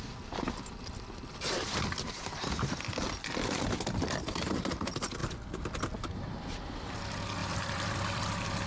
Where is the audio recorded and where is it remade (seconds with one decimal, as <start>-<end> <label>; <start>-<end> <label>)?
0.0-7.4 recorded; 7.4-8.2 remade; 8.2-8.7 recorded